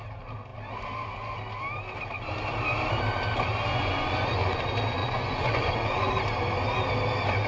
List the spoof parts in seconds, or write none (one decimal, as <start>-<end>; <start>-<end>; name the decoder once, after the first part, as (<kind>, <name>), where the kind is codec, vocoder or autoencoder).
3.7-4.6 (vocoder, Vocos); 5.0-6.1